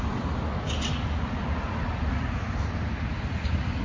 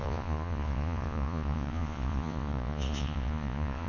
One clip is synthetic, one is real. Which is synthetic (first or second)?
second